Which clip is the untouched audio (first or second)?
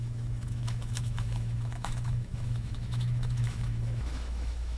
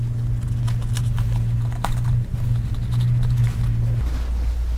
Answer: second